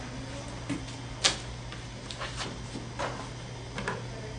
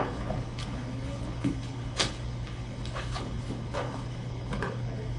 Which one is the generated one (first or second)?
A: second